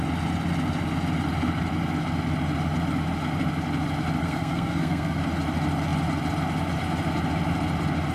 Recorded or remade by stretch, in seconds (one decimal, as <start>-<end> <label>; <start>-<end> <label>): 0.0-4.2 recorded; 4.2-5.2 remade; 5.2-8.1 recorded